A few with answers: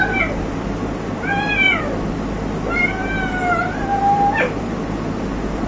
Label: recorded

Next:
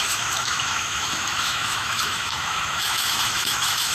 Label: remade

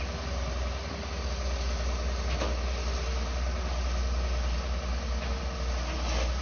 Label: recorded